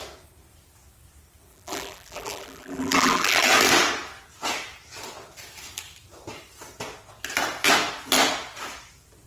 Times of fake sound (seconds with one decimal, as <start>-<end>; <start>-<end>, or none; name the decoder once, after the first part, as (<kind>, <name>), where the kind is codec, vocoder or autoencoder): 1.5-3.4 (vocoder, BigVGAN v2)